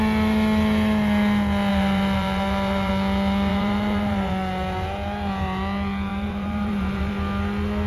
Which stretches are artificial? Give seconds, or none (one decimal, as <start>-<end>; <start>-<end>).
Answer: 1.7-2.9; 3.5-4.3; 6.1-7.1